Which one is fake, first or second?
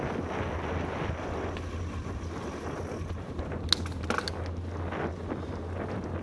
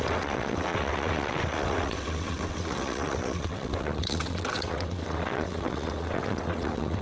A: second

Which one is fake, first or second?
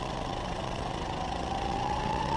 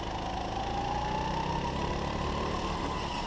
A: first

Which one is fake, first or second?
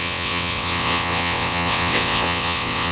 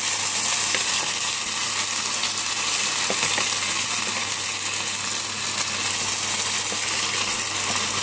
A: first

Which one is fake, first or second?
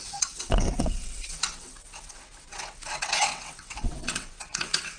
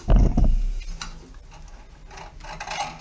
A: first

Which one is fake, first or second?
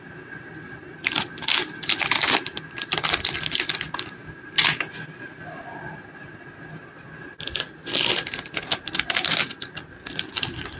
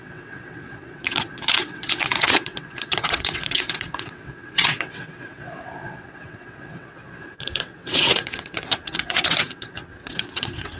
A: second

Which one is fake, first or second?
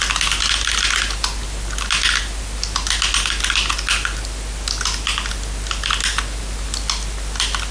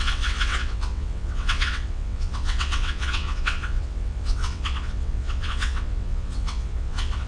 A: second